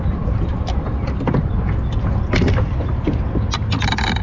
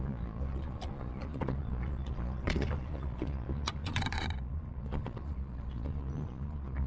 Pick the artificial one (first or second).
second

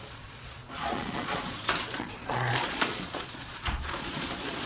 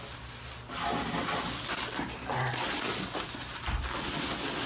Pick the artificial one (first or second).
first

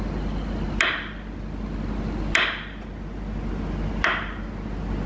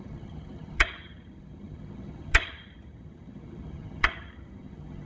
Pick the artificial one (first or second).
second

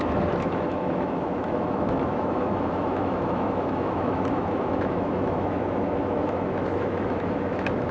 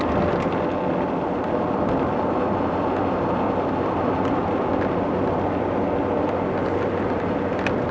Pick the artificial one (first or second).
first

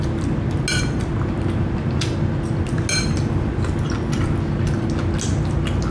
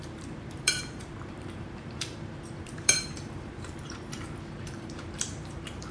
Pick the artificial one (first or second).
second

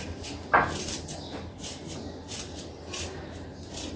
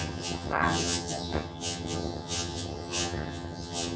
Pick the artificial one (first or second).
second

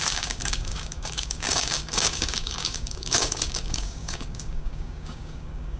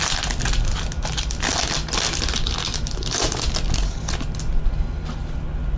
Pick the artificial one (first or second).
first